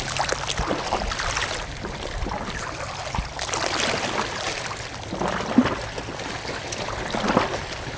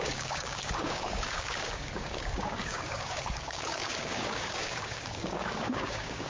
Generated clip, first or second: second